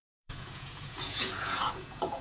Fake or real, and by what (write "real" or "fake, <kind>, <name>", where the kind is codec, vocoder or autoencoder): fake, vocoder, Vocos